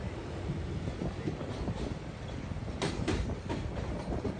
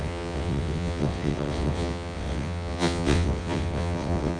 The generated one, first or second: second